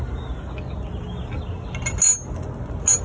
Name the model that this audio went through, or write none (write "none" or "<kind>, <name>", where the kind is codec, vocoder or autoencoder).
none